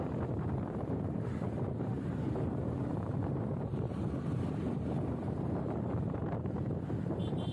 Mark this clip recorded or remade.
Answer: remade